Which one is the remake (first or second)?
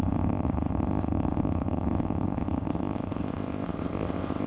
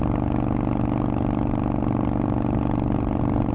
first